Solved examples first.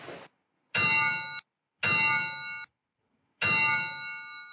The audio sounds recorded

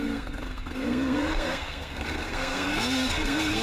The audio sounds remade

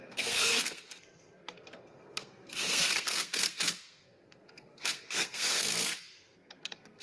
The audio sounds remade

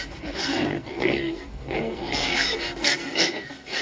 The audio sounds remade